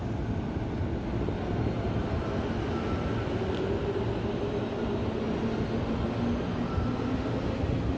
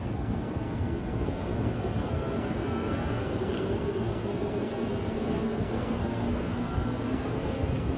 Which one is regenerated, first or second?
second